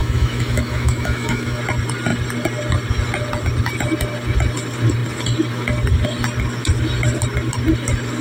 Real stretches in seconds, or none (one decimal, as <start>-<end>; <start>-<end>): 1.6-8.2